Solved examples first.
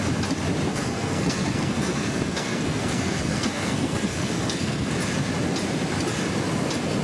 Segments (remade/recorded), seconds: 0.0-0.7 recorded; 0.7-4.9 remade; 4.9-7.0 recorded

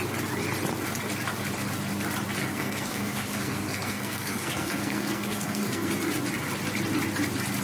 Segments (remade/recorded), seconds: 0.0-2.4 recorded; 2.4-5.9 remade; 5.9-7.6 recorded

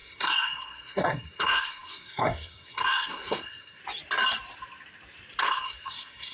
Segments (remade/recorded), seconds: 0.0-3.8 remade; 3.8-5.4 recorded; 5.4-6.3 remade

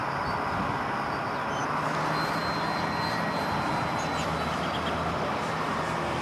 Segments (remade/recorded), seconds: 0.0-6.2 recorded

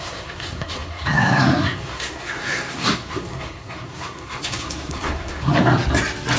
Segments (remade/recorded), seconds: 0.0-5.5 remade; 5.5-6.4 recorded

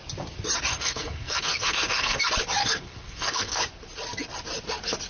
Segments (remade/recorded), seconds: 0.0-0.7 recorded; 0.7-2.2 remade; 2.2-2.6 recorded; 2.6-3.6 remade; 3.6-5.1 recorded

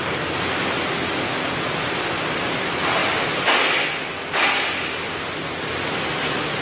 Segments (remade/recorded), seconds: 0.0-6.6 recorded

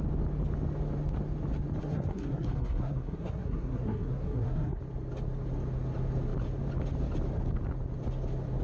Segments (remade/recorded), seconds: 0.0-1.8 recorded; 1.8-4.8 remade; 4.8-8.6 recorded